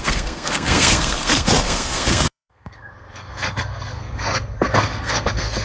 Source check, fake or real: fake